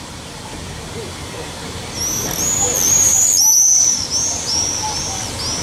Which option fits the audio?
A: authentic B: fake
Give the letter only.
A